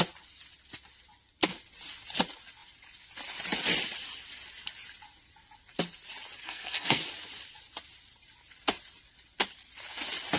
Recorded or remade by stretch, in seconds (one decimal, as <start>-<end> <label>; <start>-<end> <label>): 0.0-6.4 recorded; 6.4-7.0 remade; 7.0-10.4 recorded